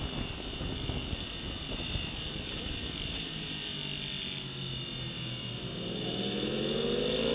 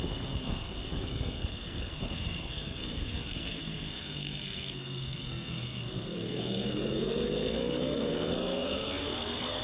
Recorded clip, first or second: first